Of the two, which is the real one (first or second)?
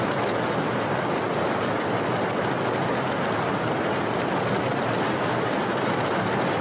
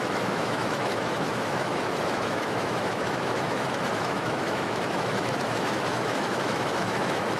first